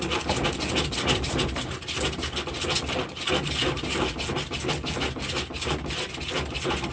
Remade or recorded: recorded